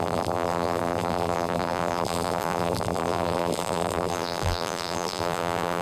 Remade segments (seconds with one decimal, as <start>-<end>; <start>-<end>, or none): 0.0-5.8